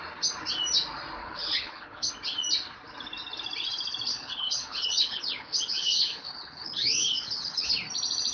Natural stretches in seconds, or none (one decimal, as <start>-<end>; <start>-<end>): 0.0-1.2; 2.1-4.1; 7.7-8.3

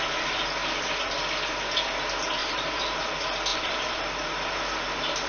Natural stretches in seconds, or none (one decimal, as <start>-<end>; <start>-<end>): 0.0-2.4; 3.0-3.5

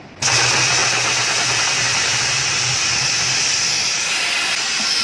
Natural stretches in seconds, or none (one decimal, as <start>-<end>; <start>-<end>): 0.0-5.0

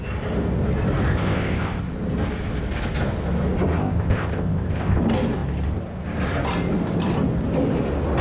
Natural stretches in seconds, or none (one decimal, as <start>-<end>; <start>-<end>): 0.0-1.1; 1.8-3.8; 5.0-8.2

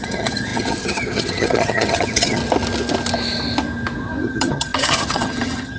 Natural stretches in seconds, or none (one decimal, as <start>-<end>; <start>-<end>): 2.4-4.2

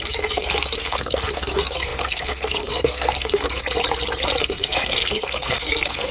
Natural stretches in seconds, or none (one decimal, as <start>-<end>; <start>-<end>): 3.6-4.4

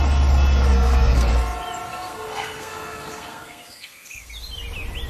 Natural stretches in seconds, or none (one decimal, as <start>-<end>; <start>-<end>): 0.0-0.7; 1.3-1.9; 4.3-5.1

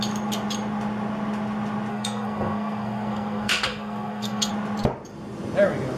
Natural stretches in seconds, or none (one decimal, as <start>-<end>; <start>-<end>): 0.0-1.9; 4.5-6.0